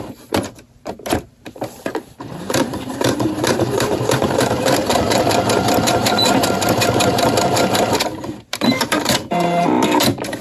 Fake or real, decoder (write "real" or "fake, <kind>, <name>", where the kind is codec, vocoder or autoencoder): fake, vocoder, BigVGAN v2